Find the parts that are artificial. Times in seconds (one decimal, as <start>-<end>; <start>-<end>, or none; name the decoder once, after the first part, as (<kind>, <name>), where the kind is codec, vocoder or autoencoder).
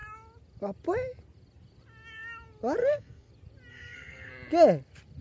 2.8-3.3 (codec, SNAC); 3.7-4.3